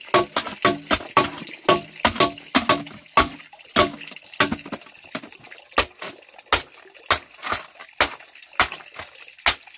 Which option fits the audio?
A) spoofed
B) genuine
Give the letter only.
B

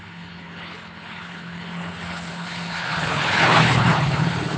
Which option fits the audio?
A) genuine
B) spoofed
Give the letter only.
B